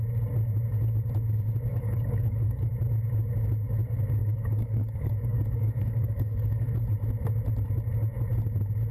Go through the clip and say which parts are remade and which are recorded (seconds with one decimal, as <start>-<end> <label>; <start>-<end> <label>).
0.0-1.7 recorded; 1.7-2.7 remade; 2.7-4.2 recorded; 4.2-6.8 remade; 6.8-8.9 recorded